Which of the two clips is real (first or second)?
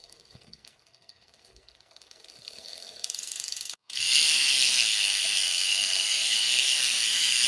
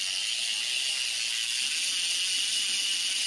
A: second